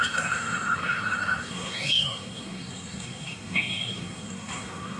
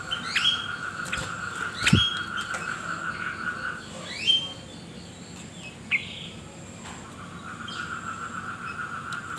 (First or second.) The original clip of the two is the second